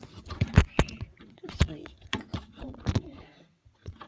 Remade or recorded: remade